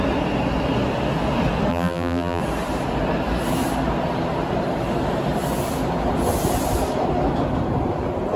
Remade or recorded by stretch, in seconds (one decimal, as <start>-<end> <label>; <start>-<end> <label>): 0.0-1.7 recorded; 1.7-2.4 remade; 2.4-8.4 recorded